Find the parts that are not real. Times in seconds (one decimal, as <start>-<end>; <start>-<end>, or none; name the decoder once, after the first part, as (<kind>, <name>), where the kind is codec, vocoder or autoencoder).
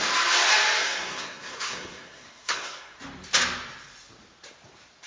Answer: 0.8-3.0 (codec, SNAC)